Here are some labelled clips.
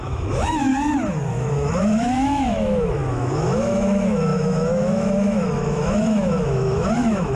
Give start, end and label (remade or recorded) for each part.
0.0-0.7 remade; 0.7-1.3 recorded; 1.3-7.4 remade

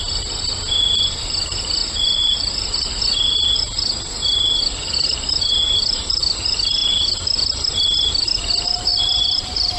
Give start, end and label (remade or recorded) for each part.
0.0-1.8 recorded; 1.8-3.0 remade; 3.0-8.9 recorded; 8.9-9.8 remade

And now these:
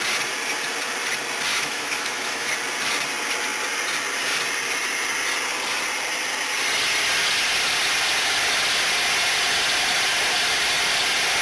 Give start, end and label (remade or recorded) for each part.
0.0-1.5 recorded; 1.5-2.5 remade; 2.5-11.4 recorded